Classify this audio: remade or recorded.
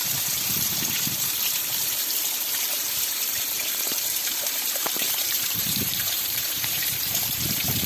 remade